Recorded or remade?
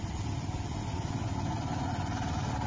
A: recorded